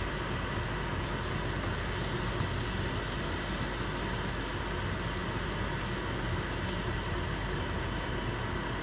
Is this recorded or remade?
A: recorded